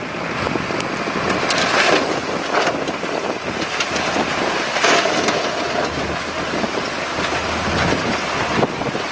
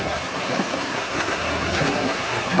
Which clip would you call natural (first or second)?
first